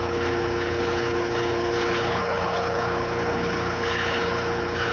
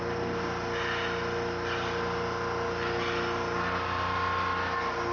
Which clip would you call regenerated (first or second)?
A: first